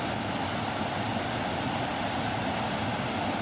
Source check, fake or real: real